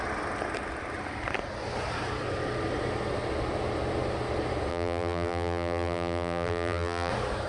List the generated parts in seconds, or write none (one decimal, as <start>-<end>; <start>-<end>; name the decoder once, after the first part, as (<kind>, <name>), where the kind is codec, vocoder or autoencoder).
4.7-7.1 (vocoder, BigVGAN v2)